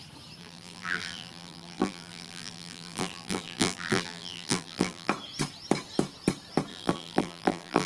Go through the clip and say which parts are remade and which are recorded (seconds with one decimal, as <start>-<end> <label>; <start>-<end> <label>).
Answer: 0.0-0.4 recorded; 0.4-5.1 remade; 5.1-6.7 recorded; 6.7-7.9 remade